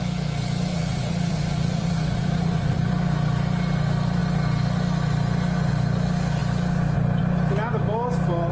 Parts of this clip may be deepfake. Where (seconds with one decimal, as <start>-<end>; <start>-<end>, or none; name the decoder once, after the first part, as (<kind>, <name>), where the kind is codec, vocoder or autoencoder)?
0.7-2.9 (vocoder, Vocos)